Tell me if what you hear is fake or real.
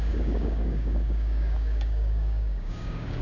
fake